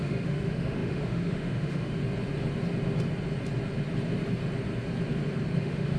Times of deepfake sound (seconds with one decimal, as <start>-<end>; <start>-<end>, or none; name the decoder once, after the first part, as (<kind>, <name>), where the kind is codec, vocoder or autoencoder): 0.0-2.0 (autoencoder, DAC-VAE); 5.6-6.0

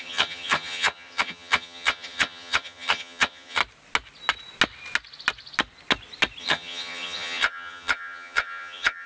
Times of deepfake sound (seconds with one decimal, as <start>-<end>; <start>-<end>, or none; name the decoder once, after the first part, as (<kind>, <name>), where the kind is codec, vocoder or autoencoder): 0.0-3.6 (vocoder, HiFi-GAN); 6.4-9.1

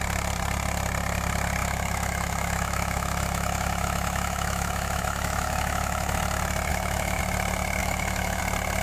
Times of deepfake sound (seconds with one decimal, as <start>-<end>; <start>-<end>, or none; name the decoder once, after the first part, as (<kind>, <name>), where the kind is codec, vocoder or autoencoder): 1.6-6.2 (autoencoder, DAC-VAE); 6.7-7.2; 7.8-8.4

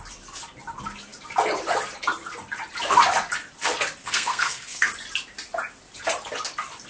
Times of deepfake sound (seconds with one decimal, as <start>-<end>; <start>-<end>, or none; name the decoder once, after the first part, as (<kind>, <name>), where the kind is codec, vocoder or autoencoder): 4.0-4.9 (codec, SNAC)